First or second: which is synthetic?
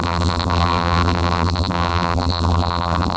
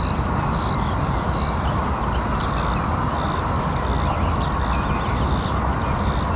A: first